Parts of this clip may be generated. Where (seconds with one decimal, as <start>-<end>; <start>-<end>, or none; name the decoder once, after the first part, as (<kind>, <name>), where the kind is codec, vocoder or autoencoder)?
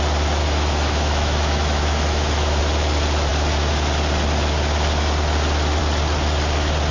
0.4-2.6 (autoencoder, DAC-VAE)